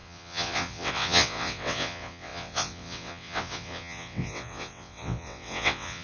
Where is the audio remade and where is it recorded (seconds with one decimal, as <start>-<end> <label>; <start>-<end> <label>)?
0.0-6.0 remade